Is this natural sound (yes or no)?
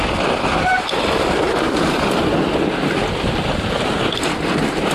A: yes